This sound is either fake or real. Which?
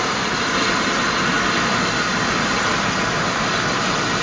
real